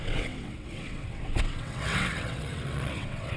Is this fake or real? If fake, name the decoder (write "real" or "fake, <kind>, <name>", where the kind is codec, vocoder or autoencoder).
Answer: fake, vocoder, WaveNeXt